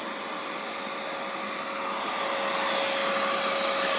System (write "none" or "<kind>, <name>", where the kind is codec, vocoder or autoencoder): none